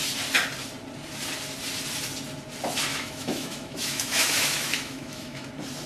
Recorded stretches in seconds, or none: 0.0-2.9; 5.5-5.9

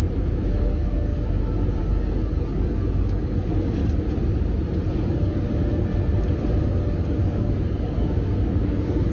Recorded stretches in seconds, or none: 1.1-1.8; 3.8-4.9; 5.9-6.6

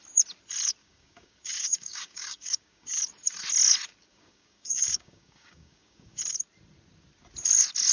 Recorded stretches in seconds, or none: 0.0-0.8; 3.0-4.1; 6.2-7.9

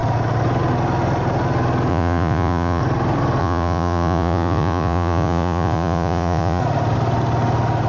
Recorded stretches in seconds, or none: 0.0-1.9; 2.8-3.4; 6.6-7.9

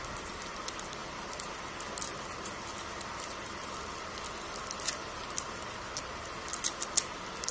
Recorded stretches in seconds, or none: 0.0-7.5